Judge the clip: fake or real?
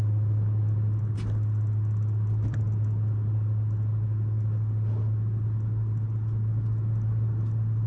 real